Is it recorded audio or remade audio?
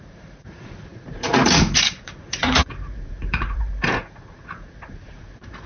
remade